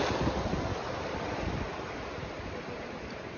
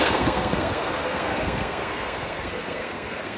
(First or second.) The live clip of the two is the first